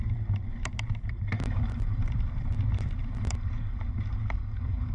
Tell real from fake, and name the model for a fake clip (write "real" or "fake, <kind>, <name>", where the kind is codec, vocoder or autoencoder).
fake, vocoder, BigVGAN v2